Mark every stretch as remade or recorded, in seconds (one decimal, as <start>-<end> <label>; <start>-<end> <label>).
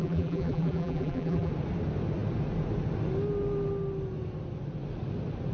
0.0-1.5 remade; 1.5-5.5 recorded